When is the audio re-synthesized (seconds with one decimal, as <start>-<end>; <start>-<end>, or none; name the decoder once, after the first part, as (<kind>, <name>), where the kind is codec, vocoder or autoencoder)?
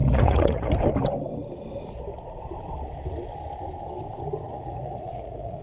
0.0-0.7 (vocoder, Vocos); 4.5-5.6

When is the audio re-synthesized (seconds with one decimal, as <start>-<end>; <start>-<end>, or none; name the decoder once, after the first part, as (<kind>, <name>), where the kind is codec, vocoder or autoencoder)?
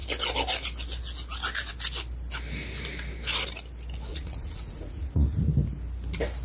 4.1-5.5 (vocoder, Vocos)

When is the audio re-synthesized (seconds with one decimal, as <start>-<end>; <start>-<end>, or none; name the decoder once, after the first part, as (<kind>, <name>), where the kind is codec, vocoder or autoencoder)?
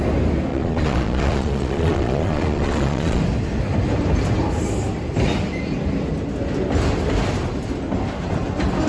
0.5-3.2 (vocoder, Vocos)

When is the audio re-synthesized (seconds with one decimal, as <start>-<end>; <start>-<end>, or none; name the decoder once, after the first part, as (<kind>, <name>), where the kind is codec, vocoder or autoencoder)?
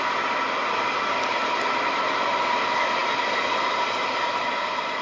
none